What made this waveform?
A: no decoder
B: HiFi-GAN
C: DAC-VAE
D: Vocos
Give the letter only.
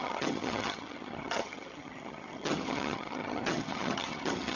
B